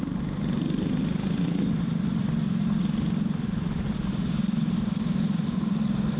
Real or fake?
real